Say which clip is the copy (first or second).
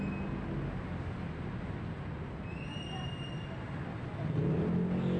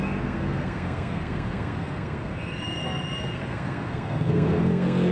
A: second